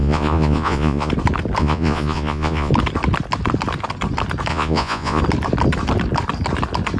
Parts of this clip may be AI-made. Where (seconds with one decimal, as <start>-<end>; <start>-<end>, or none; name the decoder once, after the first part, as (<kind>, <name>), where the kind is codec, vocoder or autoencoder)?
0.0-1.1 (vocoder, Vocos); 1.6-2.7; 4.5-5.2

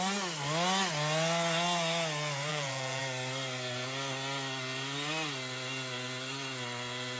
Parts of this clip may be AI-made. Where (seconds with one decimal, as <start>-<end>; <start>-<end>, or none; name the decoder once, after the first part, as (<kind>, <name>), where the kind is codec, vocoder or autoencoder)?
2.5-3.0 (vocoder, Vocos)

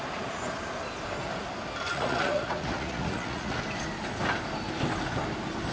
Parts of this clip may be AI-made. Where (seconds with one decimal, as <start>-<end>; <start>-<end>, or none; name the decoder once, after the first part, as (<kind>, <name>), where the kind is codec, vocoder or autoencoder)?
1.9-3.6 (vocoder, Vocos)

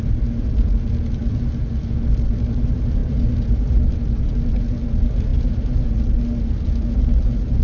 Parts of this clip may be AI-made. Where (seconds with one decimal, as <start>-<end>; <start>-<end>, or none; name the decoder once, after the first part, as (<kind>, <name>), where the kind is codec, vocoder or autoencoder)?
none

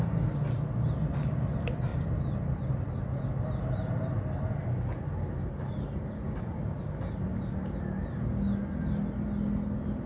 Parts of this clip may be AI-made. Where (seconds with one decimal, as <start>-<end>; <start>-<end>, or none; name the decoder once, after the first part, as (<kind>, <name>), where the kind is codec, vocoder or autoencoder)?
none

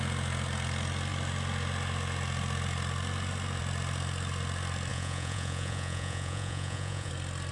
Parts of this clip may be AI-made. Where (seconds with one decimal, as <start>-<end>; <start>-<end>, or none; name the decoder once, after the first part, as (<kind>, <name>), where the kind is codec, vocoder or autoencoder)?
4.9-7.1 (vocoder, Vocos)

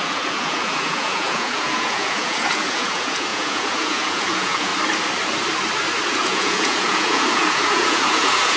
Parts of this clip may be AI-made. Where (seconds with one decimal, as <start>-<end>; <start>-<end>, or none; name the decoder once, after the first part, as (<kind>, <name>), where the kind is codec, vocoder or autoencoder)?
0.0-4.7 (vocoder, Vocos); 6.1-8.6